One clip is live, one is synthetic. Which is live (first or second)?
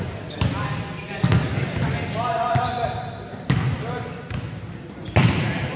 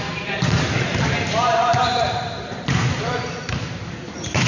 first